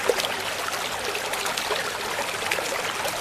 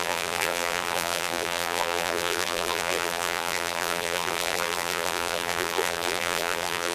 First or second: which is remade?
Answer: second